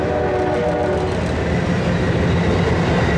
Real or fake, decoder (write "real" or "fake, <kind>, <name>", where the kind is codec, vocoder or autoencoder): real